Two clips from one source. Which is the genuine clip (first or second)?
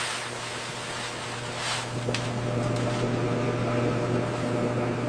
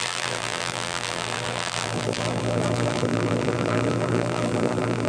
first